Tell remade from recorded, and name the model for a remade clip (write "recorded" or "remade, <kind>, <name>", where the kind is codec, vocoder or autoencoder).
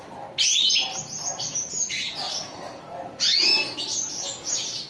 recorded